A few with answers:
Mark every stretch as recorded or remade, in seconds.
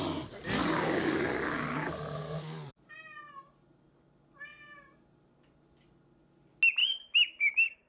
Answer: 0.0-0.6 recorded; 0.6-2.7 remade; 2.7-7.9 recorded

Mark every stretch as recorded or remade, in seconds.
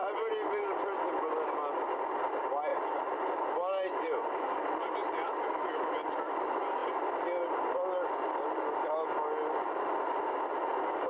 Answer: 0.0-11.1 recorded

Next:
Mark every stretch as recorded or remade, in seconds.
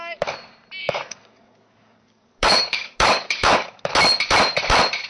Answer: 0.0-0.8 recorded; 0.8-3.9 remade; 3.9-5.1 recorded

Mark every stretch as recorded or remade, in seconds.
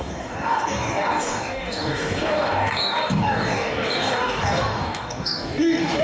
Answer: 0.0-6.0 remade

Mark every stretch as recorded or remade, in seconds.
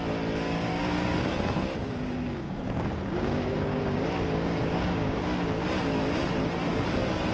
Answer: 0.0-0.7 recorded; 0.7-1.3 remade; 1.3-1.8 recorded; 1.8-5.2 remade; 5.2-7.3 recorded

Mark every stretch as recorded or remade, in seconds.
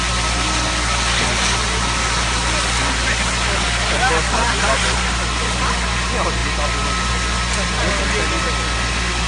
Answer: 0.0-9.3 recorded